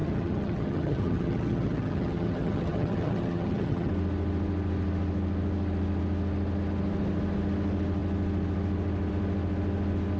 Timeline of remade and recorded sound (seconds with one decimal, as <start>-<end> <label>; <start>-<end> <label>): 0.0-3.9 remade; 3.9-10.2 recorded